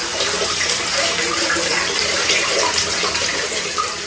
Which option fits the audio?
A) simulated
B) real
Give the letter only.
A